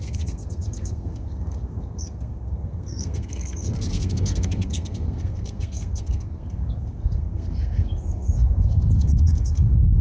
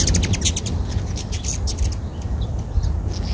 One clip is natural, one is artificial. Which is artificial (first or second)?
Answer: first